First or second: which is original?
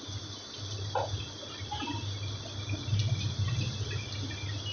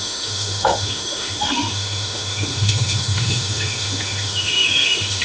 first